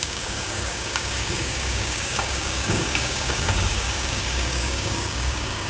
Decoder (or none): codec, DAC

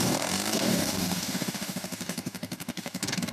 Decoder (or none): codec, DAC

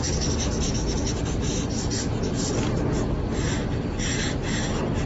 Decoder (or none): none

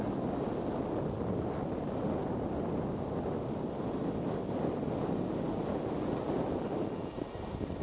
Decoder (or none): none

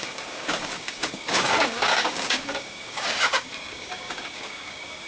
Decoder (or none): codec, DAC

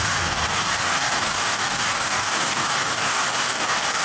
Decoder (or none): codec, DAC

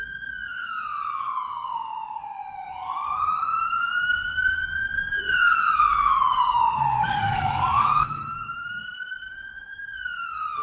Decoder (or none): codec, DAC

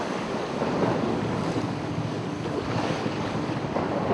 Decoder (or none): codec, DAC